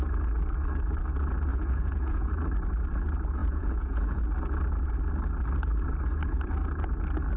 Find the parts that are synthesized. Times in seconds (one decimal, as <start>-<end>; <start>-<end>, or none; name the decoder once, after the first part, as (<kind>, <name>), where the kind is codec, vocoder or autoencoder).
1.5-2.3 (vocoder, Vocos); 3.4-4.2